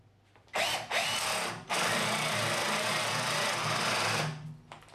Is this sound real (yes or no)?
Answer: yes